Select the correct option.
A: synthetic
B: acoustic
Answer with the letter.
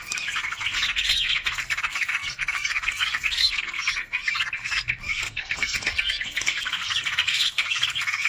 A